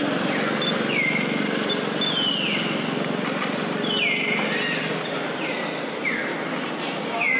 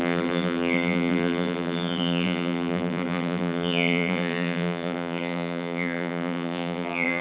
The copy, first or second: second